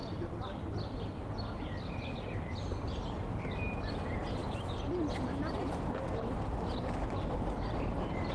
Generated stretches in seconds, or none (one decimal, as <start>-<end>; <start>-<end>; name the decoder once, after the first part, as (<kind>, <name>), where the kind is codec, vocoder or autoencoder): 0.0-2.7 (vocoder, BigVGAN v2)